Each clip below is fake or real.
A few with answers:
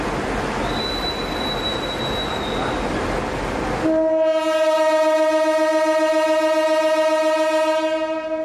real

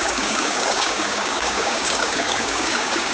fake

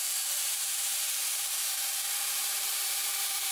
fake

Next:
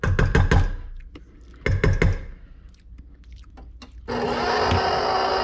real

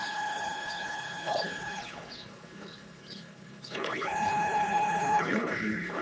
fake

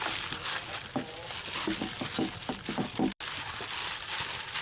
real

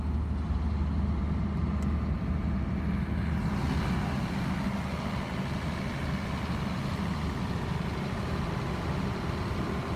real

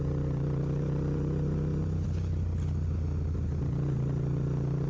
real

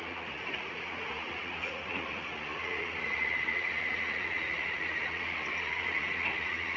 fake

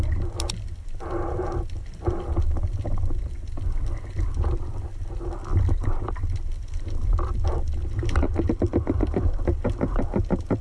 real